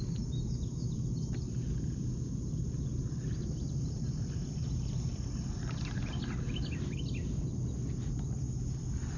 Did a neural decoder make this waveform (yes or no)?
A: no